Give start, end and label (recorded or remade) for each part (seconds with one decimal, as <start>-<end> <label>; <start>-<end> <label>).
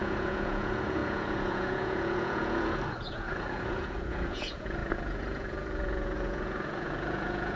0.0-7.6 remade